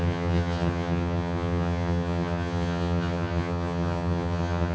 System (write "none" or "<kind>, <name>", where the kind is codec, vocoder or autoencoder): vocoder, HiFi-GAN